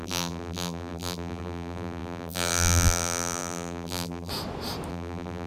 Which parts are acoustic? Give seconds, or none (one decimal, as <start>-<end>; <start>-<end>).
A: 4.3-4.9